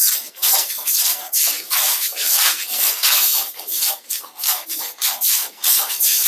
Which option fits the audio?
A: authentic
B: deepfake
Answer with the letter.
B